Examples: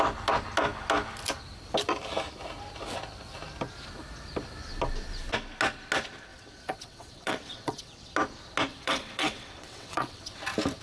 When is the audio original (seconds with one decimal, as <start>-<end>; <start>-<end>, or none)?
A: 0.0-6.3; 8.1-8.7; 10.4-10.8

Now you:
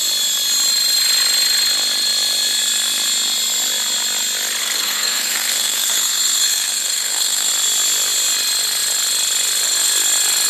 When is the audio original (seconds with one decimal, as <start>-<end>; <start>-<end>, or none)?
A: 0.0-4.6; 7.5-10.5

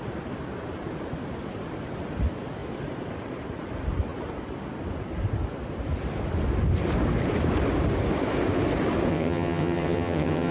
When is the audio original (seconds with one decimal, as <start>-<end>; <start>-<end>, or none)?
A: 0.0-9.1

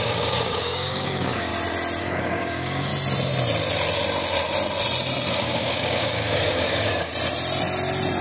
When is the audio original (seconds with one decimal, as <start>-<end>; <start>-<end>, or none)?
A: 1.5-2.0; 2.9-5.3; 7.1-8.2

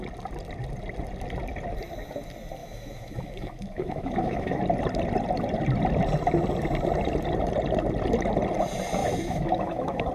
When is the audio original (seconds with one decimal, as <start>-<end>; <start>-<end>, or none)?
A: 0.0-2.6; 4.6-9.0